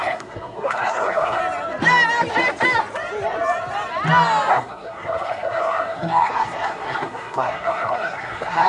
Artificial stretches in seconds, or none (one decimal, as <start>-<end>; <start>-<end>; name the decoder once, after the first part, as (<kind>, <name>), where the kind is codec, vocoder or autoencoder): 0.0-1.4 (codec, SNAC); 4.5-8.7